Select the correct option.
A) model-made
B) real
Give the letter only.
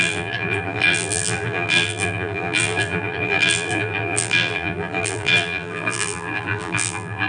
A